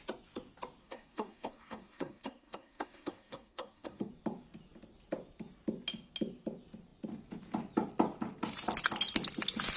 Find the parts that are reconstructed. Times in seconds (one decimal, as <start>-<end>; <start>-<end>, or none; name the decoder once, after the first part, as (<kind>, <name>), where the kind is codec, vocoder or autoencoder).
0.8-4.1 (codec, SNAC)